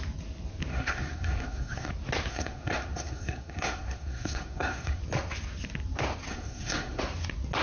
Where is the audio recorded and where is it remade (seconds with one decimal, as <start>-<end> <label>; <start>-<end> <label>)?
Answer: 0.0-0.7 recorded; 0.7-1.9 remade; 1.9-2.3 recorded; 2.3-5.0 remade; 5.0-6.3 recorded; 6.3-7.0 remade; 7.0-7.6 recorded